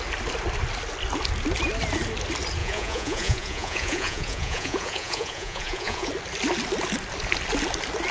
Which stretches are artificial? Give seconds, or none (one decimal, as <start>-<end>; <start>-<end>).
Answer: 2.6-6.1